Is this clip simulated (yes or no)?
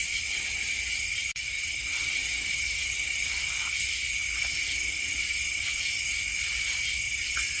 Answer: no